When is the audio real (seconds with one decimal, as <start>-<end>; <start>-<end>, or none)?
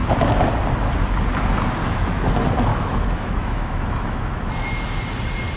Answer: 0.0-1.8; 2.3-2.7; 4.5-5.6